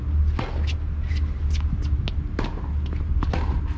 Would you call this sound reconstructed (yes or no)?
no